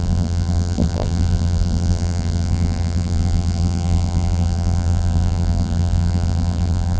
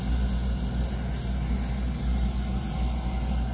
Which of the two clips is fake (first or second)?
first